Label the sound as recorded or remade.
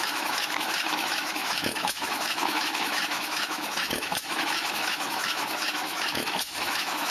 remade